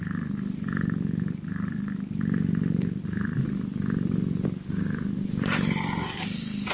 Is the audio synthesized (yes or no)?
no